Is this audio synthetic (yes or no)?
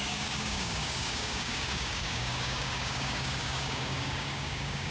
yes